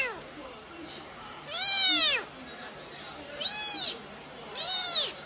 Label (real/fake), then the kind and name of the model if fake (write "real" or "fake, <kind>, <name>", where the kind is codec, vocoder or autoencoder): real